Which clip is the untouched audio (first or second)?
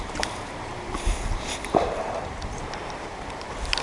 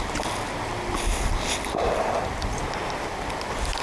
second